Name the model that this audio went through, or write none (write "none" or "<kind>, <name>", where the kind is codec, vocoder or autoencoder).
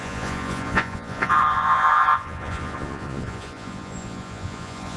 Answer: vocoder, Vocos